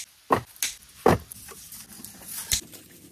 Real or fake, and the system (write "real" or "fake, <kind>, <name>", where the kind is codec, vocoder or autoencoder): real